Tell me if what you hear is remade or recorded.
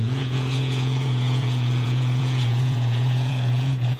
remade